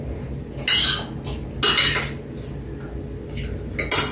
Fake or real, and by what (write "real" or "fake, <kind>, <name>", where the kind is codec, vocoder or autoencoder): real